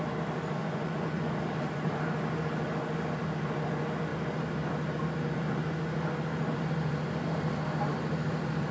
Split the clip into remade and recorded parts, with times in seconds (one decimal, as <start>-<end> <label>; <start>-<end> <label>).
0.0-0.6 recorded; 0.6-1.3 remade; 1.3-8.7 recorded